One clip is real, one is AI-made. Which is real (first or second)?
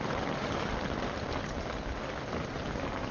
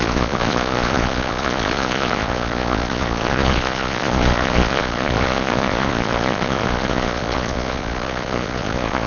first